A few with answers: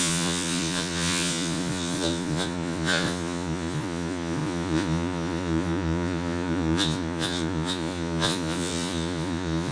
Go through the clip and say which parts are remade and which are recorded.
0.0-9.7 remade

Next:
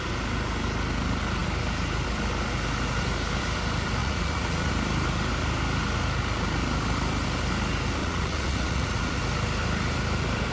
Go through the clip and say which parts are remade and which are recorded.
0.0-4.0 recorded; 4.0-4.7 remade; 4.7-8.0 recorded; 8.0-9.2 remade; 9.2-10.5 recorded